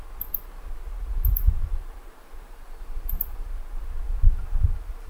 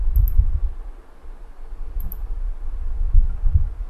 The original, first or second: second